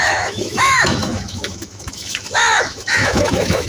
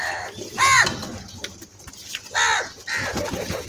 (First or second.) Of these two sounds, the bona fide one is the second